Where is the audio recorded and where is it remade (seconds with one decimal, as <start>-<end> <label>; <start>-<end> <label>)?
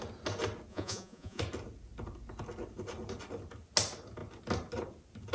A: 0.0-0.7 recorded; 0.7-1.4 remade; 1.4-5.3 recorded